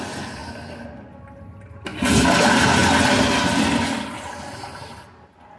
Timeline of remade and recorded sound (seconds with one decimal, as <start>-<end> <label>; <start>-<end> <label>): 0.0-5.6 recorded